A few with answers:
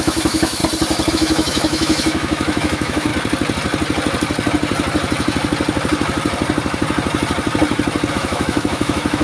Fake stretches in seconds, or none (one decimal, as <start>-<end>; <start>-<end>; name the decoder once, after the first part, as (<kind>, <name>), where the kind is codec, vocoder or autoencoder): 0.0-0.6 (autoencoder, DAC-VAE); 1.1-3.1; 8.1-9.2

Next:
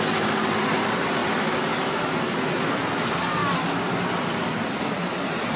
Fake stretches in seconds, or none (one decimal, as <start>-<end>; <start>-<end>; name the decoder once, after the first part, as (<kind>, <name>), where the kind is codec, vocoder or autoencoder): none

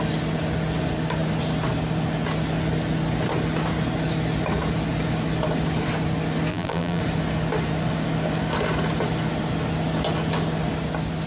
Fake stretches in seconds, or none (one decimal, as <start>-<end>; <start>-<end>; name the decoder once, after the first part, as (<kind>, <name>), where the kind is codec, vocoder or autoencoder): 6.5-7.0 (vocoder, BigVGAN v2)

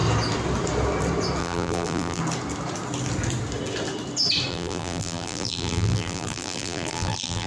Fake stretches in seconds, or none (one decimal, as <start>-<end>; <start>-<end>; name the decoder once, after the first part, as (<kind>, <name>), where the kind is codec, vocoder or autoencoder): 1.4-2.2 (vocoder, BigVGAN v2); 4.5-7.5